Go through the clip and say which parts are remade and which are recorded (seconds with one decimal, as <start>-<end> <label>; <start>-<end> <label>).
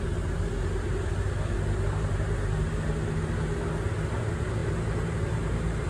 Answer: 0.0-1.9 recorded; 1.9-2.9 remade; 2.9-5.9 recorded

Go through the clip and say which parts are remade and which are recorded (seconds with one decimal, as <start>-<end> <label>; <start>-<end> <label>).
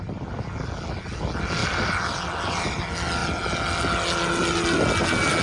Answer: 0.0-1.6 recorded; 1.6-2.8 remade; 2.8-5.4 recorded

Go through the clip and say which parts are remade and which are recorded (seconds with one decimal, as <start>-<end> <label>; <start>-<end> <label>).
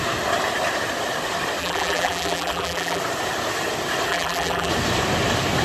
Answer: 0.0-1.6 recorded; 1.6-3.0 remade; 3.0-4.1 recorded; 4.1-4.7 remade; 4.7-5.6 recorded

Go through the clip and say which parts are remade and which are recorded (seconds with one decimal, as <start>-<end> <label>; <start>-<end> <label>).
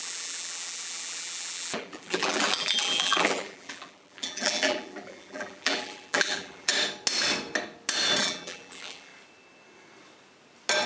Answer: 0.0-6.7 remade; 6.7-8.2 recorded; 8.2-9.1 remade; 9.1-10.9 recorded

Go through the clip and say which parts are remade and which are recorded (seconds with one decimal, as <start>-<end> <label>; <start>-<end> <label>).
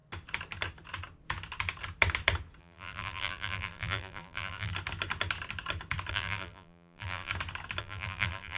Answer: 0.0-2.6 recorded; 2.6-4.7 remade; 4.7-6.1 recorded; 6.1-7.3 remade; 7.3-7.8 recorded; 7.8-8.6 remade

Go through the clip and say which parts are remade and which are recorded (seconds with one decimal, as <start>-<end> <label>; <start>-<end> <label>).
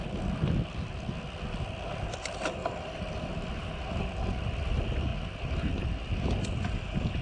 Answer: 0.0-7.2 recorded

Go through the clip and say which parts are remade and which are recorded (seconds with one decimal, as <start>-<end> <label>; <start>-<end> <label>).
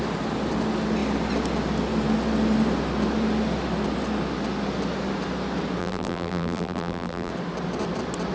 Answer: 0.0-5.8 recorded; 5.8-7.3 remade; 7.3-8.3 recorded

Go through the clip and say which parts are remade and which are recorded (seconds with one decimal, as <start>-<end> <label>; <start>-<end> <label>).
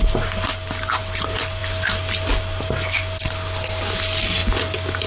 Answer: 0.0-5.1 recorded